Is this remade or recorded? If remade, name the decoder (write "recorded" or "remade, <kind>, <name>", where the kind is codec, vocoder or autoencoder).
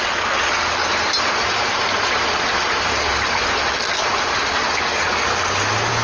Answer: recorded